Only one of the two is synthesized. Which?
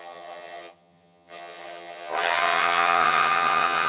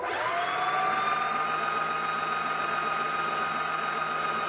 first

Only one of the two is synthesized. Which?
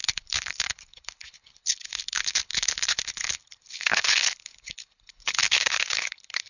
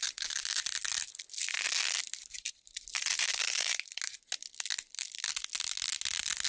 first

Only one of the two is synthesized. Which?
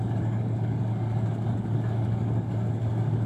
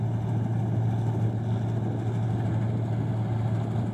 first